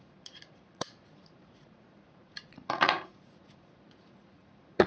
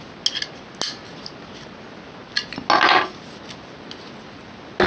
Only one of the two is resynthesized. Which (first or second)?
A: first